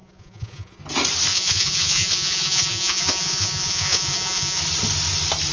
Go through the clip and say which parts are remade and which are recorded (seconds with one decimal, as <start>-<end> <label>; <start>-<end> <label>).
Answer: 0.0-0.8 remade; 0.8-1.3 recorded; 1.3-4.6 remade; 4.6-5.5 recorded